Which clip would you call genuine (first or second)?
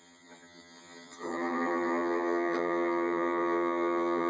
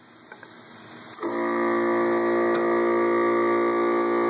second